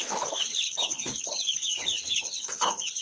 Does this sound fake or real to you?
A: fake